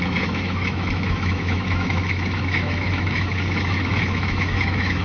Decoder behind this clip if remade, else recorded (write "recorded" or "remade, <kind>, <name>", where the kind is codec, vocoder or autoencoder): remade, autoencoder, DAC-VAE